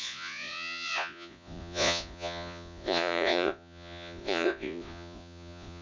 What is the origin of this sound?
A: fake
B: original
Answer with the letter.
A